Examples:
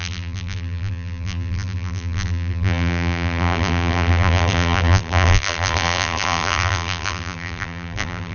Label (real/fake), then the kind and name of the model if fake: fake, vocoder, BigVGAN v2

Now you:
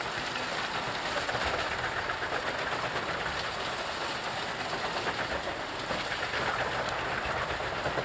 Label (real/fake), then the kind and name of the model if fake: real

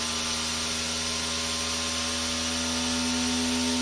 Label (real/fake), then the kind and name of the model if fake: real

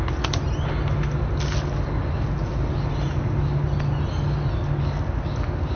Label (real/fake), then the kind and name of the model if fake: real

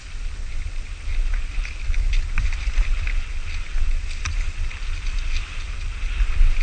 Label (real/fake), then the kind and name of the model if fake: real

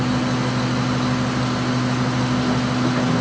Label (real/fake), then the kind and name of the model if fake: real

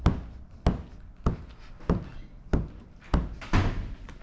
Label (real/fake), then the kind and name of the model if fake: real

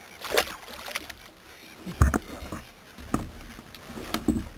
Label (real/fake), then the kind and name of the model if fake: real